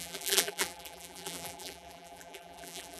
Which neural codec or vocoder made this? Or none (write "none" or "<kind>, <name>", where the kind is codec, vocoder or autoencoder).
vocoder, BigVGAN v2